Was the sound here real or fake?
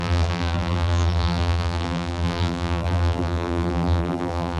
fake